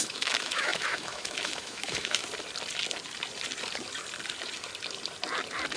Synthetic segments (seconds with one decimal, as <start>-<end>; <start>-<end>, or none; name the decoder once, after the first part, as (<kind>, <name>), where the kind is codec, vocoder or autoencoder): 0.0-2.2 (autoencoder, DAC-VAE)